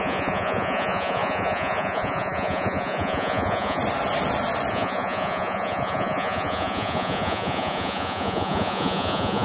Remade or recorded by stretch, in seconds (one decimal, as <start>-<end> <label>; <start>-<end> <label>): 0.0-3.8 remade; 3.8-4.7 recorded; 4.7-9.4 remade

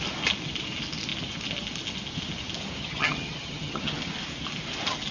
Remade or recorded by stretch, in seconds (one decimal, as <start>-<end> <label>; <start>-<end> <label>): 0.0-2.8 recorded; 2.8-4.0 remade; 4.0-5.1 recorded

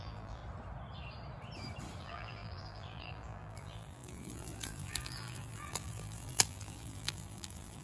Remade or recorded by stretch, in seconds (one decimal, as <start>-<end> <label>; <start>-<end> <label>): 0.0-0.4 remade; 0.4-2.0 recorded; 2.0-7.8 remade

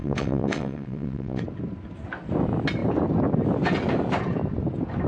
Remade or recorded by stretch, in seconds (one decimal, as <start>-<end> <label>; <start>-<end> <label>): 0.0-1.4 remade; 1.4-5.1 recorded